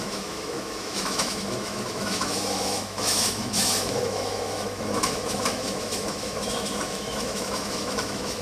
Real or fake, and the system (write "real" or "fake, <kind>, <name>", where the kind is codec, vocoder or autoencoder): fake, autoencoder, DAC-VAE